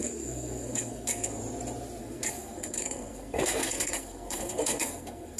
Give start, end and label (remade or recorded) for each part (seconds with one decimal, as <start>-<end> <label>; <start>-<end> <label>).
0.0-1.4 remade; 1.4-2.0 recorded; 2.0-5.4 remade